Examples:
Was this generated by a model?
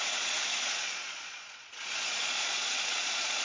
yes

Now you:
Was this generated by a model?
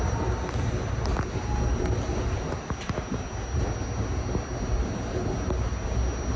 no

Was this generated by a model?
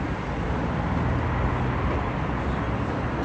no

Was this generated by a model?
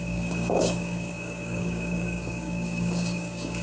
yes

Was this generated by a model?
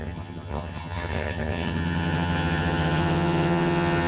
yes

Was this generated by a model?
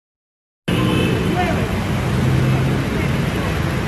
no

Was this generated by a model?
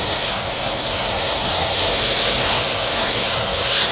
yes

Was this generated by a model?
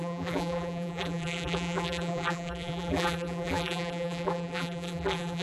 yes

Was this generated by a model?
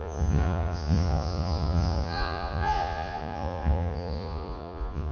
yes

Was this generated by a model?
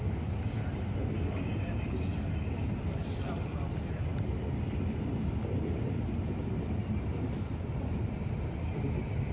no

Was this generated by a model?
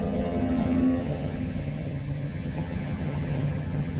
yes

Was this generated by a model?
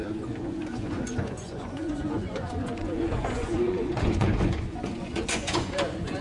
yes